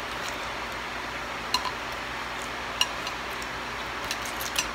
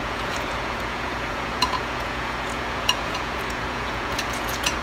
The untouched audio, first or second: first